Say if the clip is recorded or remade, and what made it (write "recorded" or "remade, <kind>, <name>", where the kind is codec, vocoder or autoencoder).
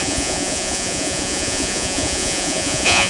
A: remade, vocoder, Vocos